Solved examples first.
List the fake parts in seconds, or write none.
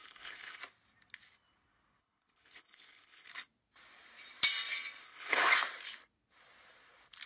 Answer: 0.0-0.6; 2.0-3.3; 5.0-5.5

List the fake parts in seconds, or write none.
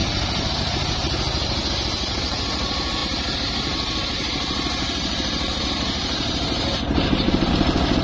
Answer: 3.0-7.5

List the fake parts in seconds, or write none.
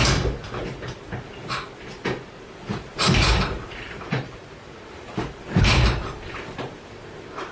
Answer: 2.7-7.5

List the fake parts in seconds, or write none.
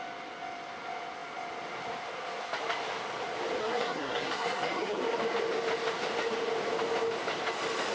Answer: 3.6-5.0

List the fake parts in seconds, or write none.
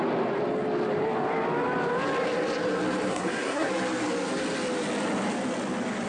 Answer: 3.1-3.7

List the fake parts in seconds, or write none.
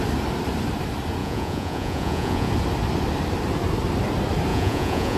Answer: 1.2-2.5; 4.5-5.2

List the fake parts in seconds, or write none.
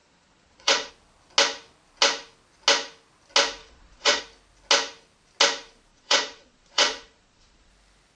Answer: 0.0-0.9; 3.6-4.2; 5.9-7.7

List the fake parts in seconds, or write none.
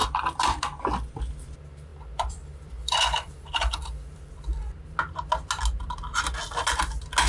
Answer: 0.0-0.6; 1.9-4.3